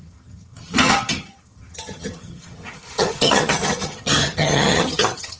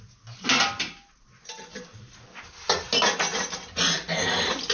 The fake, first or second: first